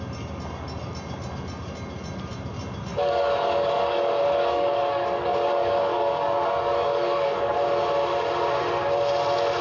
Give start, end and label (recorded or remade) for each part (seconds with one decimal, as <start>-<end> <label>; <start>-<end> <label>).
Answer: 0.0-2.9 recorded; 2.9-7.5 remade; 7.5-9.6 recorded

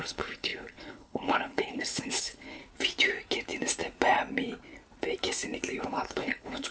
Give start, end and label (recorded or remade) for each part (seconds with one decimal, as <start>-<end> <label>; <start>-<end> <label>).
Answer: 0.0-2.6 remade; 2.6-5.8 recorded; 5.8-6.7 remade

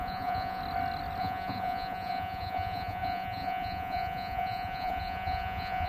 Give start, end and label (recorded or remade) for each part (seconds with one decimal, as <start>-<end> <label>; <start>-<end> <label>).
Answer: 0.0-0.6 remade; 0.6-1.2 recorded; 1.2-5.9 remade

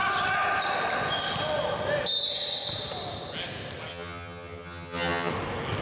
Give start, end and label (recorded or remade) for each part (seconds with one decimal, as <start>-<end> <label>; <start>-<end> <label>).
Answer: 0.0-3.9 recorded; 3.9-5.3 remade; 5.3-5.8 recorded

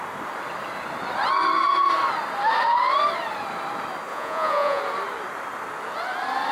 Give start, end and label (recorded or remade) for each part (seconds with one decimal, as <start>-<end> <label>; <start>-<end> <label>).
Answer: 0.0-4.1 recorded; 4.1-4.8 remade; 4.8-6.5 recorded

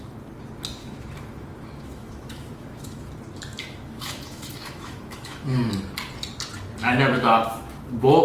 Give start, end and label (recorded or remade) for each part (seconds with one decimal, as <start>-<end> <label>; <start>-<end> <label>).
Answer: 0.0-0.8 recorded; 0.8-3.1 remade; 3.1-3.5 recorded; 3.5-5.7 remade; 5.7-6.8 recorded; 6.8-8.2 remade

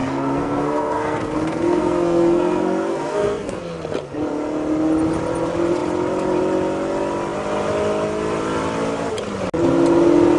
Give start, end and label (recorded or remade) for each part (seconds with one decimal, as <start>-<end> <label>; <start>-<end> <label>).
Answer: 0.0-3.6 remade; 3.6-10.4 recorded

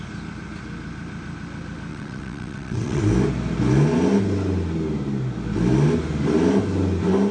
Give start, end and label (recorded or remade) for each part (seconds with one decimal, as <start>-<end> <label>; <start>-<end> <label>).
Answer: 0.0-1.9 recorded; 1.9-3.0 remade; 3.0-7.3 recorded